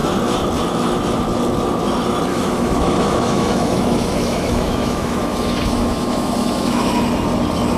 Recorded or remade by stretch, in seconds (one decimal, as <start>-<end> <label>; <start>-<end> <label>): 0.0-2.3 recorded; 2.3-6.9 remade; 6.9-7.8 recorded